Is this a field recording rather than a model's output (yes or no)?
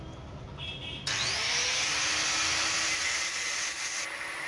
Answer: yes